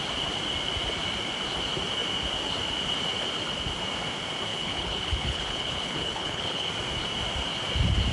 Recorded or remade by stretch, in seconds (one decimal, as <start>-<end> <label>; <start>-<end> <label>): 0.0-4.5 recorded; 4.5-6.7 remade; 6.7-8.1 recorded